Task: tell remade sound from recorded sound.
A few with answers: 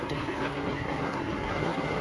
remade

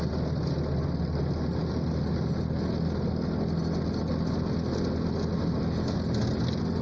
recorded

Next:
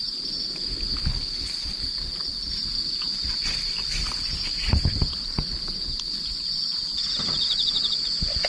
recorded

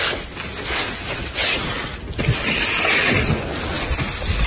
recorded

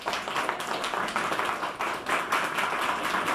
recorded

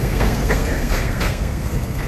remade